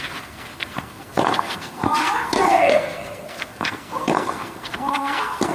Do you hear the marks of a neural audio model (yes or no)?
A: yes